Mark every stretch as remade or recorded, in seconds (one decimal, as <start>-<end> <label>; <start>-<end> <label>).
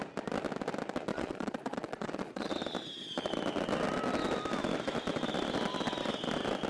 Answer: 0.0-1.1 recorded; 1.1-2.5 remade; 2.5-6.7 recorded